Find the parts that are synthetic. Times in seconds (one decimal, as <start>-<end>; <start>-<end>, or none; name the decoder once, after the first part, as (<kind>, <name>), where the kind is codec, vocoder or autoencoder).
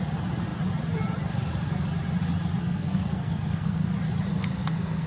2.6-3.9 (codec, SNAC); 4.3-5.1